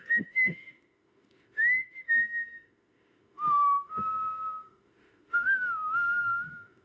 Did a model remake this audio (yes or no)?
yes